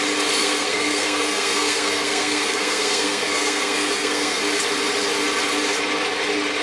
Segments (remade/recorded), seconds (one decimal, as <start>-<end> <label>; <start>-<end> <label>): 0.0-0.4 recorded; 0.4-4.4 remade; 4.4-6.6 recorded